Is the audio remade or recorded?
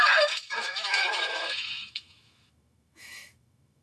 remade